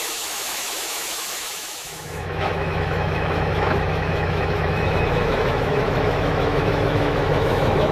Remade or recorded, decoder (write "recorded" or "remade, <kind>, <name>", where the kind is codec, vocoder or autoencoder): remade, autoencoder, DAC-VAE